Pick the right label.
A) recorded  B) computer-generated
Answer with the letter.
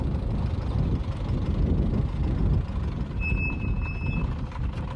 A